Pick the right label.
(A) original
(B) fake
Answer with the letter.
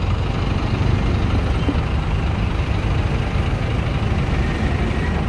A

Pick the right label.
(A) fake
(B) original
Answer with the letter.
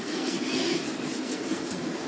A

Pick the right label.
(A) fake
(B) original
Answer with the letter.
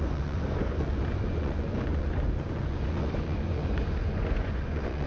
A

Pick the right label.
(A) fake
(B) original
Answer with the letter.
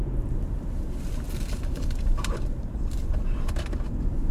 A